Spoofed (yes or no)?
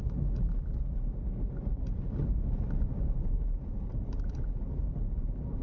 yes